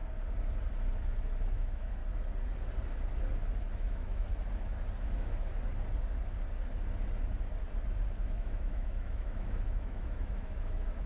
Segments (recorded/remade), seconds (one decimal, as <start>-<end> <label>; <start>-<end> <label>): 0.0-1.5 recorded; 1.5-2.0 remade; 2.0-3.7 recorded; 3.7-4.3 remade; 4.3-5.0 recorded; 5.0-5.5 remade; 5.5-8.2 recorded; 8.2-11.1 remade

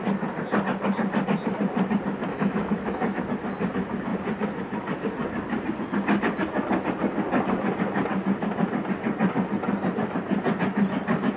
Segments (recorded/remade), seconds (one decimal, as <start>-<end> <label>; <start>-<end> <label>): 0.0-2.3 recorded; 2.3-3.2 remade; 3.2-11.4 recorded

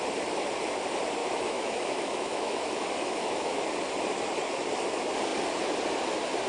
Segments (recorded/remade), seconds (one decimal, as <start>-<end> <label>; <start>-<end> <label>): 0.0-1.2 recorded; 1.2-3.6 remade; 3.6-6.5 recorded

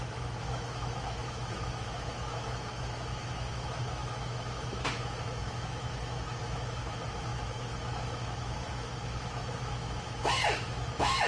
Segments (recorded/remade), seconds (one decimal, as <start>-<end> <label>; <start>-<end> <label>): 0.0-11.3 remade

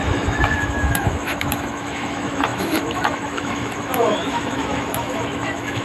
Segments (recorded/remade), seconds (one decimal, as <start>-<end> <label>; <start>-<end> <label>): 0.0-5.8 remade